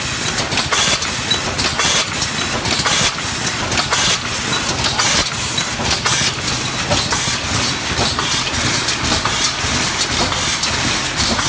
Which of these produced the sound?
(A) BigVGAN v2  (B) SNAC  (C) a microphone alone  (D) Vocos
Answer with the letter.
C